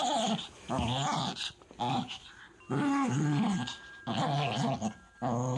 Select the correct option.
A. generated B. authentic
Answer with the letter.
B